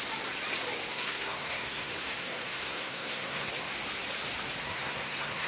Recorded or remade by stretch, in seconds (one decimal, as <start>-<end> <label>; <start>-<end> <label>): 0.0-0.9 recorded; 0.9-3.5 remade; 3.5-4.6 recorded; 4.6-5.5 remade